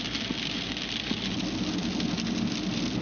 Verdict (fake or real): real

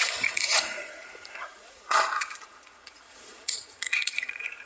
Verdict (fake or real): fake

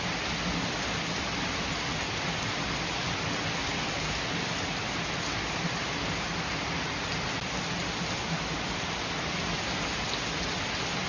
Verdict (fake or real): real